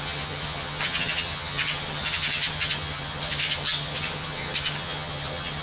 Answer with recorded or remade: remade